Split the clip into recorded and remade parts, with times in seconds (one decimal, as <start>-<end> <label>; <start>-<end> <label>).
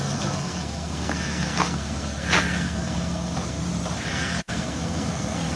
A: 0.0-3.6 remade; 3.6-4.1 recorded; 4.1-5.6 remade